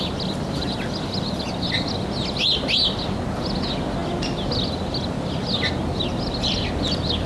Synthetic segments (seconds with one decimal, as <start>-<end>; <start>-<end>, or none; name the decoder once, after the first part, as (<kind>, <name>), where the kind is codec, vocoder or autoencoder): none